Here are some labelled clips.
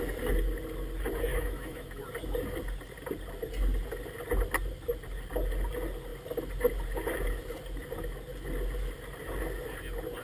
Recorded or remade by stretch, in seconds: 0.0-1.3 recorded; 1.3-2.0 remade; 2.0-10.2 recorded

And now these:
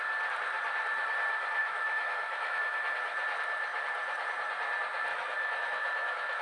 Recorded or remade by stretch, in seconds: 0.0-1.6 recorded; 1.6-2.6 remade; 2.6-5.1 recorded; 5.1-6.4 remade

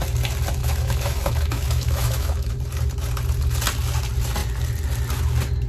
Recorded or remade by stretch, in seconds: 0.0-0.6 recorded; 0.6-2.5 remade; 2.5-5.7 recorded

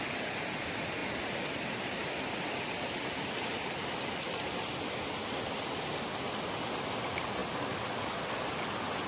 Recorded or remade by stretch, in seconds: 0.0-9.1 recorded

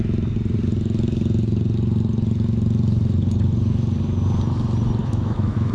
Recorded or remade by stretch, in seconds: 0.0-5.0 recorded; 5.0-5.7 remade

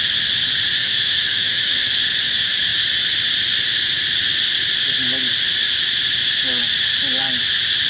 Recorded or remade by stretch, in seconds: 0.0-0.8 recorded; 0.8-1.9 remade; 1.9-7.9 recorded